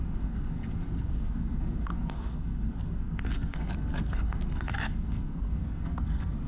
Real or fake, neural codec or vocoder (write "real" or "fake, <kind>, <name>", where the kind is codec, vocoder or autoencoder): fake, codec, SNAC